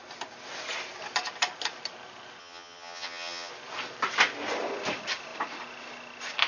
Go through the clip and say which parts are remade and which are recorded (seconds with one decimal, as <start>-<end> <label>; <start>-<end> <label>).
0.0-2.4 recorded; 2.4-3.5 remade; 3.5-6.5 recorded